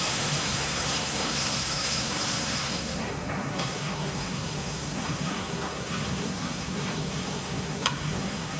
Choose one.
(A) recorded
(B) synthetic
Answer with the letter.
B